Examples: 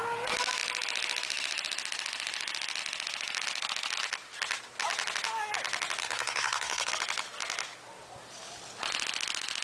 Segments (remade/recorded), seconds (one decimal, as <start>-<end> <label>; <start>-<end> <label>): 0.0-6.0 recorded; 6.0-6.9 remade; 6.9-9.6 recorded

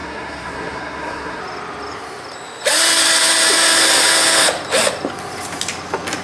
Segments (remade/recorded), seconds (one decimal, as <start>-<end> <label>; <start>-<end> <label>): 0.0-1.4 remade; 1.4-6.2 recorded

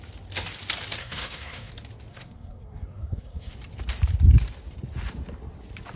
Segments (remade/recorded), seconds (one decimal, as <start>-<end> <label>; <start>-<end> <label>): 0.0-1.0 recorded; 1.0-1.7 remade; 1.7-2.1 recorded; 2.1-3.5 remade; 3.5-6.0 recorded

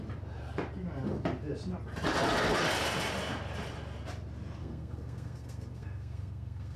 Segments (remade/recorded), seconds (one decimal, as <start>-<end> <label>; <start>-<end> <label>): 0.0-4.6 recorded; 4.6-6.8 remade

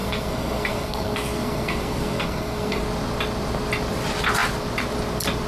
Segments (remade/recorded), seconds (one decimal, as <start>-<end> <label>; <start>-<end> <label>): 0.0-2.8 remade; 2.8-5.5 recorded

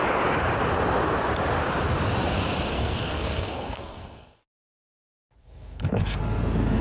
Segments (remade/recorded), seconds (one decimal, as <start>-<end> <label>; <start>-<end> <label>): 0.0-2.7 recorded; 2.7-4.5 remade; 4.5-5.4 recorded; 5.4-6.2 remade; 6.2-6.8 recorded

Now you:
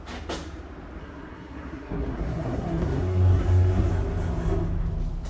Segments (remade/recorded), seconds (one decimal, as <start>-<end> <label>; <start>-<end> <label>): 0.0-1.0 recorded; 1.0-3.9 remade; 3.9-5.3 recorded